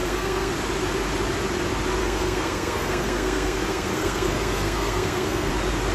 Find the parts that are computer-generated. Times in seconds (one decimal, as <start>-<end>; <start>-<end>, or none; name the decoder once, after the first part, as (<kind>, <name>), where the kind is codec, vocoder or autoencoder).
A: 0.0-0.5 (codec, SNAC); 2.0-5.5